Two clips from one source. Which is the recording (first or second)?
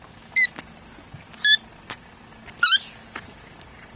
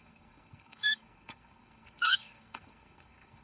first